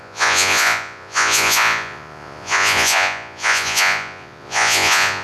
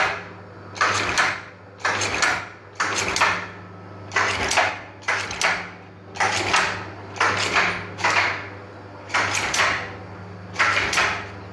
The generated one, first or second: first